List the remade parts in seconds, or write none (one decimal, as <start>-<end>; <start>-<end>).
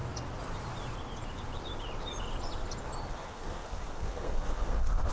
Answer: 3.1-5.1